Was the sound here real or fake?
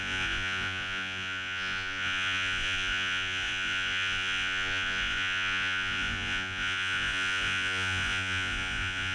fake